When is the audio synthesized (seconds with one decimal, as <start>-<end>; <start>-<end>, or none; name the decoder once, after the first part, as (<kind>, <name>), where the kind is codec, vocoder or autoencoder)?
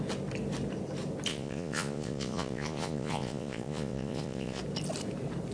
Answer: 1.3-4.6 (vocoder, Vocos)